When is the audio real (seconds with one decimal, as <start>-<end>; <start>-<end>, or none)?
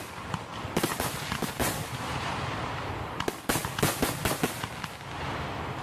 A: 0.0-0.9; 2.9-5.8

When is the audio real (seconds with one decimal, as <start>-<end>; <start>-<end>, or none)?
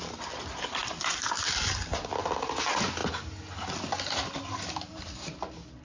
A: 0.0-0.8; 1.5-5.8